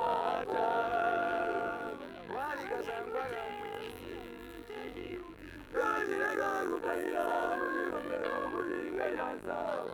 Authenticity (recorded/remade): remade